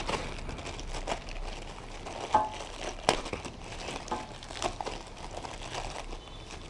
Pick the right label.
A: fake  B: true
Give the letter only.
B